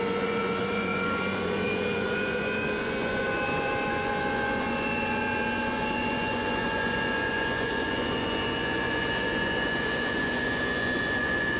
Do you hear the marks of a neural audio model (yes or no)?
yes